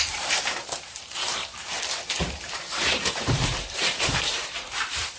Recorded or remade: remade